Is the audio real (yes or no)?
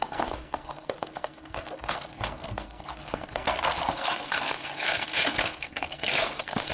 no